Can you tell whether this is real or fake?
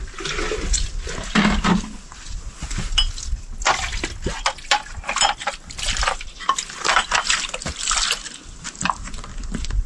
real